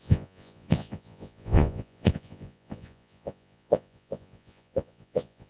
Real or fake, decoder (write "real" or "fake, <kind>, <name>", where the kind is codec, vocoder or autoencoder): fake, vocoder, Vocos